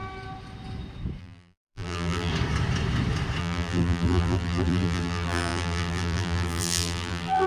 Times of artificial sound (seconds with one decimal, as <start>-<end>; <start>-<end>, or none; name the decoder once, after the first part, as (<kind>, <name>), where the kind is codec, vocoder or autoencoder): 1.2-2.3 (vocoder, BigVGAN v2); 3.4-7.5